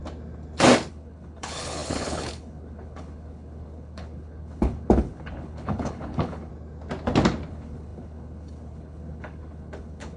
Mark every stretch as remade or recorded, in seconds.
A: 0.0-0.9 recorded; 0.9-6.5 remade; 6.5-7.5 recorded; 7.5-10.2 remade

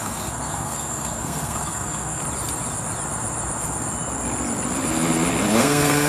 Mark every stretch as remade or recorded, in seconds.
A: 0.0-2.2 remade; 2.2-5.6 recorded; 5.6-6.1 remade